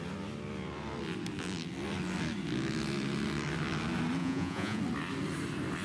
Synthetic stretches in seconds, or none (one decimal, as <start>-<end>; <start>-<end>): 4.2-4.8

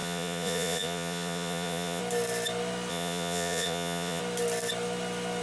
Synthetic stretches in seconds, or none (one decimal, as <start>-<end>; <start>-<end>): 0.0-2.0; 2.9-4.2

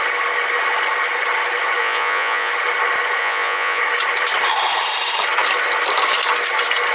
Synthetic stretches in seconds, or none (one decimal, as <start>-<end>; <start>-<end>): 1.8-2.5; 3.2-3.8

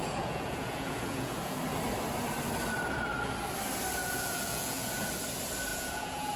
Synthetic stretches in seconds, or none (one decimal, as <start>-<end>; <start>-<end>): 0.0-1.6; 4.0-5.1; 5.7-6.4